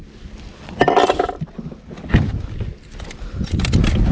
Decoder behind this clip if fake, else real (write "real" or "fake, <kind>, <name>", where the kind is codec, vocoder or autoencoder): real